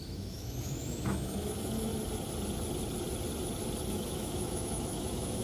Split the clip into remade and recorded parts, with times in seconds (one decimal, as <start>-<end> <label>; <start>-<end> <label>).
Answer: 0.0-1.9 remade; 1.9-3.9 recorded; 3.9-5.4 remade